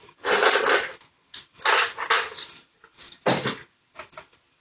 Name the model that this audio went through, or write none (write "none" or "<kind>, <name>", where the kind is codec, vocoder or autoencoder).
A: none